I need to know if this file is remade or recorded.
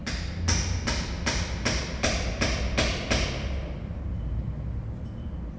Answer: recorded